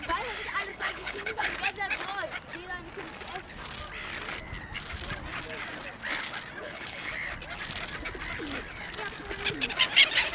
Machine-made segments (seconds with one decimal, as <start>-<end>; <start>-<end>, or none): 0.7-1.5; 6.6-7.1